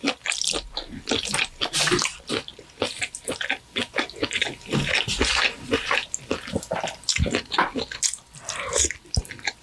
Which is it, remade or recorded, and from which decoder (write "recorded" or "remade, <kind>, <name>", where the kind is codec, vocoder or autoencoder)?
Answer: recorded